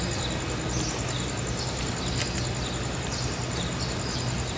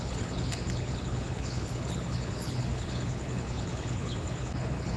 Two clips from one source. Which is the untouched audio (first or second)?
first